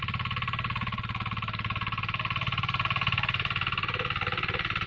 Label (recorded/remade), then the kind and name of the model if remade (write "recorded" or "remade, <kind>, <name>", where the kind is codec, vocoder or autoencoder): recorded